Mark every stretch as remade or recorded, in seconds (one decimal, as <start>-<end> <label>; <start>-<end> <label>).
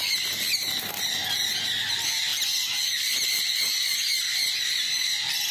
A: 0.0-5.5 recorded